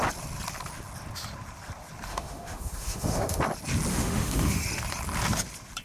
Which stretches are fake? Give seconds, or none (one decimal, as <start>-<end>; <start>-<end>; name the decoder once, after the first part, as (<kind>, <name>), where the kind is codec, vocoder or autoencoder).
2.1-3.4 (autoencoder, DAC-VAE); 3.9-4.6